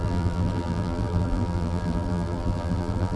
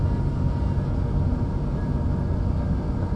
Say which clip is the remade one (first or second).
first